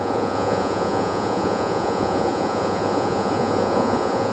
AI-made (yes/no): yes